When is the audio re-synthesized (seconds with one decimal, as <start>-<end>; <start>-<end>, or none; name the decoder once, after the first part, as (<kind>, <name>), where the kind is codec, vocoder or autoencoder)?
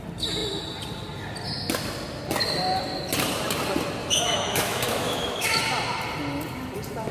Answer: 4.0-5.6 (autoencoder, DAC-VAE)